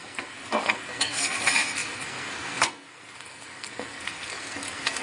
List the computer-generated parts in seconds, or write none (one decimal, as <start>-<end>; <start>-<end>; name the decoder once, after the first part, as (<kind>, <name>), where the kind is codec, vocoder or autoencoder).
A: 0.0-5.0 (codec, SNAC)